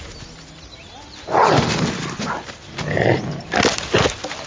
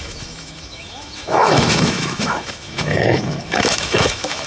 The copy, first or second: second